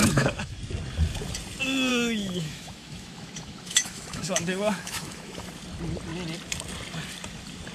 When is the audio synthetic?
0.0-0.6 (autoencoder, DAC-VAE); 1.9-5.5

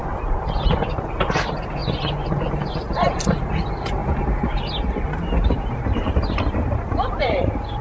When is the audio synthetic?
0.7-1.8 (vocoder, BigVGAN v2); 2.5-4.0; 5.0-7.8